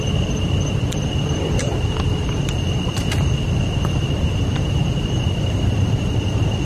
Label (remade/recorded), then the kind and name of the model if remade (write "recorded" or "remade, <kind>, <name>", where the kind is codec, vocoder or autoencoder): recorded